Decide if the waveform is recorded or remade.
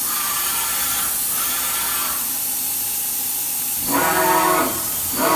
recorded